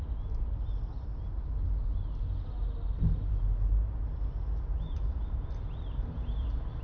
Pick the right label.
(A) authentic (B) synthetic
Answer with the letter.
A